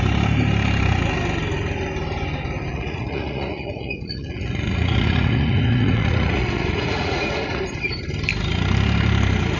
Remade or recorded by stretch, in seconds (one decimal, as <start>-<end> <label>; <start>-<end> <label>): 0.0-2.7 recorded; 2.7-7.6 remade; 7.6-9.6 recorded